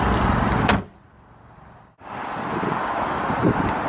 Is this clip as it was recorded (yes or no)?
yes